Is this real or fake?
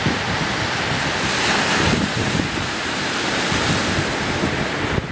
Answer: real